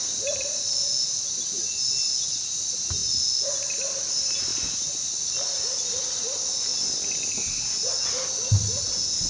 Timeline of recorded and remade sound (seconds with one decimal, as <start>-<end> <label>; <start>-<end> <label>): 0.0-4.5 recorded; 4.5-5.1 remade; 5.1-9.3 recorded